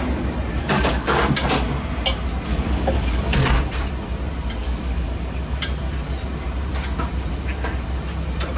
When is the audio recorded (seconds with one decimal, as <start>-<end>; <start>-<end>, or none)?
0.0-0.6; 1.2-2.5; 3.5-4.6; 5.6-8.6